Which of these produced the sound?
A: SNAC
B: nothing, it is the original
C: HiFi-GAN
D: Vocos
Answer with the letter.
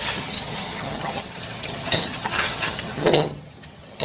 C